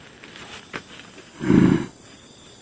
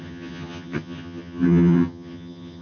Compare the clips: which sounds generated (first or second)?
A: second